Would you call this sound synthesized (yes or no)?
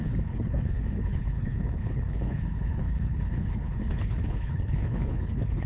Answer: yes